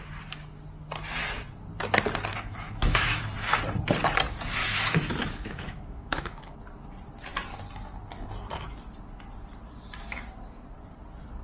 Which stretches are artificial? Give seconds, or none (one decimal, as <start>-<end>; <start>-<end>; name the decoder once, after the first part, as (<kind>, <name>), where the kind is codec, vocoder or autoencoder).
2.3-3.2 (autoencoder, DAC-VAE); 4.6-6.4